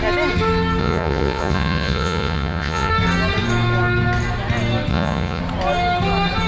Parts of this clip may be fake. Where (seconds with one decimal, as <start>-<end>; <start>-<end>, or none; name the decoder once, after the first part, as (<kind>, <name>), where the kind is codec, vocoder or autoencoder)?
0.8-2.9 (vocoder, Vocos); 4.9-5.4